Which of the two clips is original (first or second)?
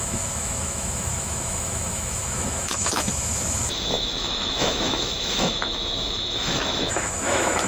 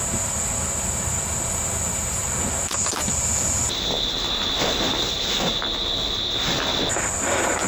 second